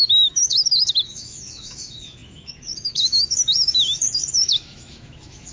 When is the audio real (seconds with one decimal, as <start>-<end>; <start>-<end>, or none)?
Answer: none